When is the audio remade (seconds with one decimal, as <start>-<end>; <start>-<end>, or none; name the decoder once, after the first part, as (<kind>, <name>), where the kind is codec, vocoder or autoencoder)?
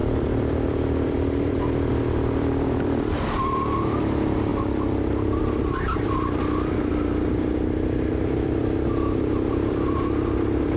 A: 0.0-4.5 (vocoder, BigVGAN v2); 5.4-10.8